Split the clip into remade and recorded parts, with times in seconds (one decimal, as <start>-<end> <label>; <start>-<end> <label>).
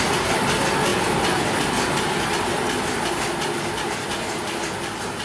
0.0-5.2 recorded